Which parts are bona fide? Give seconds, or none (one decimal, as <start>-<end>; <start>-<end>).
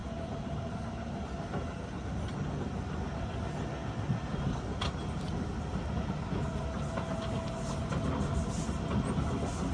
0.8-3.8; 4.4-9.7